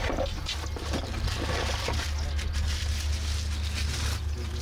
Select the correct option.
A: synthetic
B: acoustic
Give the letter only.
B